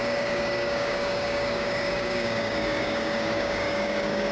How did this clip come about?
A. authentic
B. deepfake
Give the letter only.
B